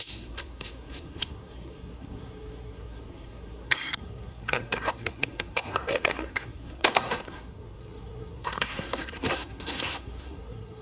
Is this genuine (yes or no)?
no